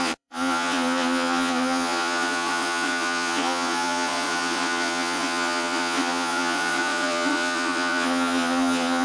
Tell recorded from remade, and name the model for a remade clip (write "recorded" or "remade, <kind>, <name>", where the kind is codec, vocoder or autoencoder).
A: remade, vocoder, Vocos